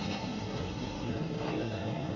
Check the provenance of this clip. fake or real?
fake